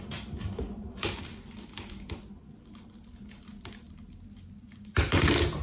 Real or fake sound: real